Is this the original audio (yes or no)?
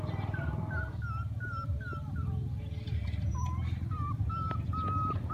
yes